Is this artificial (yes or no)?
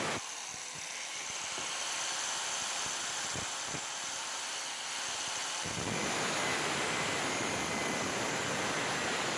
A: no